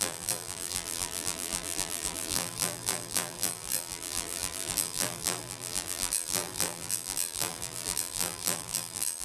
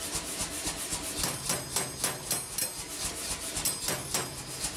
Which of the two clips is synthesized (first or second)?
first